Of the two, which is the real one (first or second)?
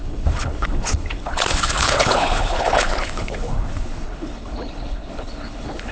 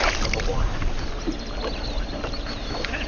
second